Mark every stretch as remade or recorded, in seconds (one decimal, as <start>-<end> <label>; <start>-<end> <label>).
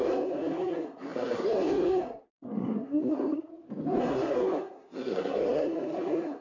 0.0-3.5 remade; 3.5-4.0 recorded; 4.0-6.4 remade